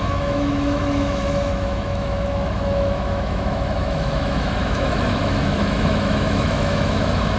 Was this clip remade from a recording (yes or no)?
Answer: yes